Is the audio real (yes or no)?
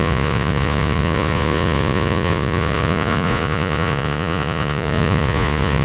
no